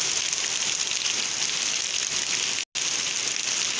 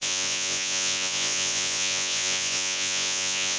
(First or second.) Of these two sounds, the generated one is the second